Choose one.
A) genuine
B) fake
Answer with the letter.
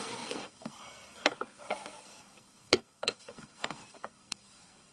B